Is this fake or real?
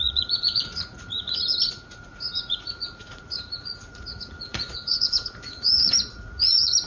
fake